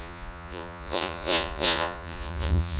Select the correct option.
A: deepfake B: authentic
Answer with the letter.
A